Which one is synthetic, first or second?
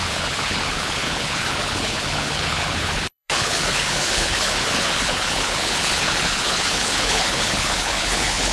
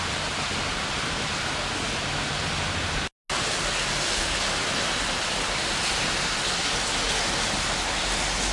first